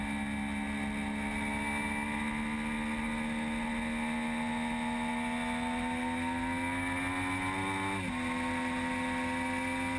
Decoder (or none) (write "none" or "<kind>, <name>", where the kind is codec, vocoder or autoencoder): none